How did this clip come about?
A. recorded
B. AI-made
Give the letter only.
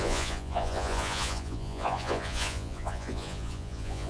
B